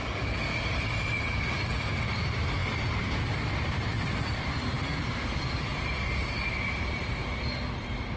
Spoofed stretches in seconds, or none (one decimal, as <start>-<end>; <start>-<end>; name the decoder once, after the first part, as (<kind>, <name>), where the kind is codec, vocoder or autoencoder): 2.6-4.8 (vocoder, BigVGAN v2); 6.2-7.2

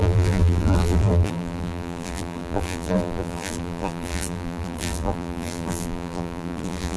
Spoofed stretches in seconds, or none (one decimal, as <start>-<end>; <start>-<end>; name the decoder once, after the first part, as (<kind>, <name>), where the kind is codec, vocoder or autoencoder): 0.0-7.0 (vocoder, BigVGAN v2)

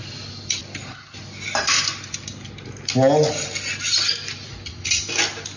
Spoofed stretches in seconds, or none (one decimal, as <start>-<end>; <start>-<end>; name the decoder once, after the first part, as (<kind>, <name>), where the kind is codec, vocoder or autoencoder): none

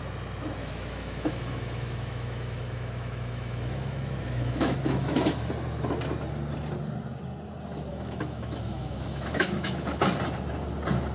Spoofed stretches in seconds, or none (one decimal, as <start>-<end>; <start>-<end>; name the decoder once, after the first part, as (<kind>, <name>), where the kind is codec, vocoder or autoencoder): 0.6-5.5 (autoencoder, DAC-VAE); 7.9-10.0